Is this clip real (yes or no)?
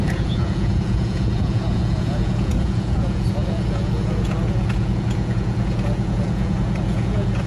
no